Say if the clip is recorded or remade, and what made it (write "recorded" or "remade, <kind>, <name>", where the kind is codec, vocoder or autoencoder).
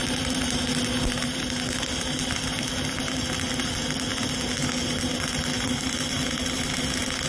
recorded